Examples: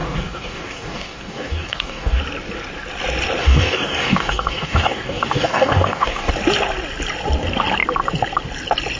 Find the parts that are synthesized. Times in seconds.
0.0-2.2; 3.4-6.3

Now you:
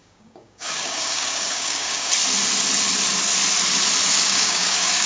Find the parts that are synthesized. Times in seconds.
0.0-2.1; 4.1-5.1

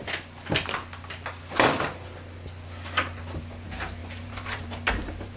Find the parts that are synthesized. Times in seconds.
4.0-5.4

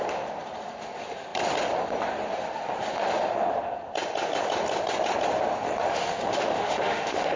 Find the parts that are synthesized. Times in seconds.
5.9-7.4

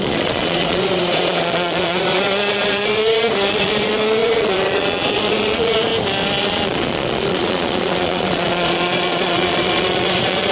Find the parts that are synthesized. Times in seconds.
0.0-5.9; 6.4-10.5